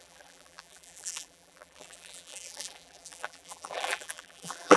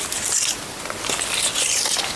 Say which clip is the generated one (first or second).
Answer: first